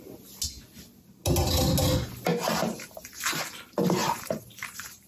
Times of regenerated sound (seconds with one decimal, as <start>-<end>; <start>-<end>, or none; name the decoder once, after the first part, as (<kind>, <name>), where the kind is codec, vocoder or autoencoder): 2.3-3.4 (vocoder, BigVGAN v2); 4.0-5.1